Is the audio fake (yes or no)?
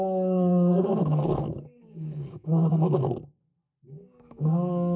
yes